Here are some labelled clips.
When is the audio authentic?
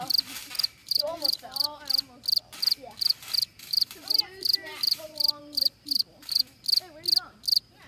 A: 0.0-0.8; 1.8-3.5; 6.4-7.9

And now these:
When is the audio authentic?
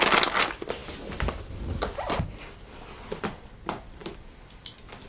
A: 0.0-5.1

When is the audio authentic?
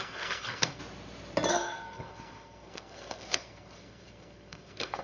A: 0.8-1.5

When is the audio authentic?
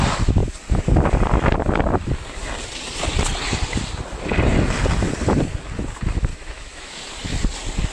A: 0.0-6.3; 7.0-7.9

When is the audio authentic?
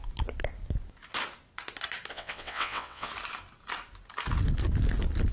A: 0.0-2.1; 3.1-5.3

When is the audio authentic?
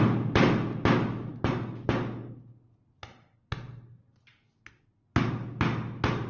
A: 0.0-6.3